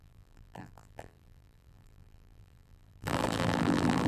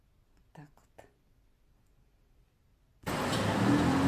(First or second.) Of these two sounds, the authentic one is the second